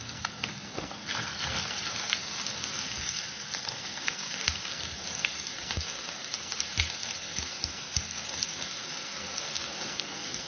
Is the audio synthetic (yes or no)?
yes